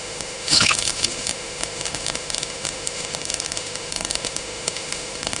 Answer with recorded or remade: remade